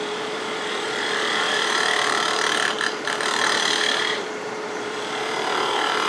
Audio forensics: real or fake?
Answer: fake